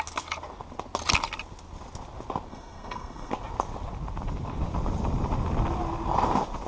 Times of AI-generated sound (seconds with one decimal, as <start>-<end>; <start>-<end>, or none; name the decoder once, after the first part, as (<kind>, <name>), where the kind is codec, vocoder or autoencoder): 2.5-3.3 (codec, SNAC)